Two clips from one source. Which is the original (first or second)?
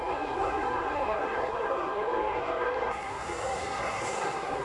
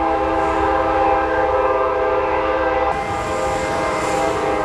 second